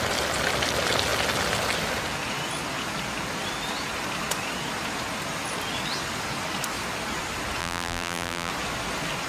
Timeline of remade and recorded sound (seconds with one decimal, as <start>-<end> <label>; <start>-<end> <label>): 0.0-7.6 recorded; 7.6-8.5 remade; 8.5-9.3 recorded